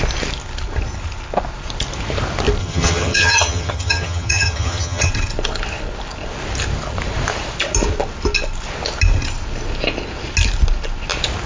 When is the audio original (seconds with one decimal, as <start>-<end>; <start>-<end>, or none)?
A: 0.0-2.6; 5.1-11.5